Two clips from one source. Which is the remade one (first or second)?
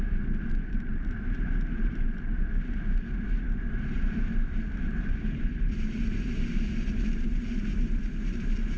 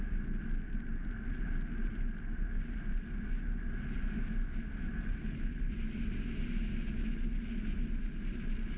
first